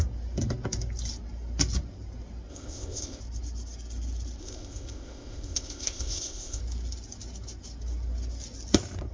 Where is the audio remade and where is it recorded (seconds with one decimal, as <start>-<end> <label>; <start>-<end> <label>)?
0.0-2.5 recorded; 2.5-3.2 remade; 3.2-4.4 recorded; 4.4-6.6 remade; 6.6-9.1 recorded